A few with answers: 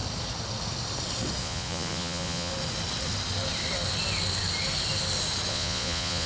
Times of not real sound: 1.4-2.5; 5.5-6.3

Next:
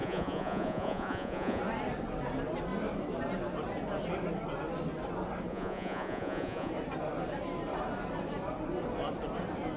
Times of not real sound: 0.0-1.6; 5.5-6.7

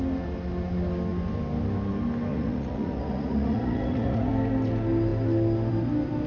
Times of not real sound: 2.3-4.3

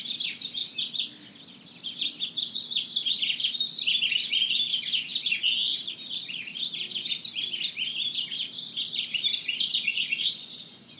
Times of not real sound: 9.9-11.0

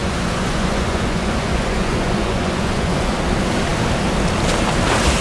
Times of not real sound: 0.0-3.1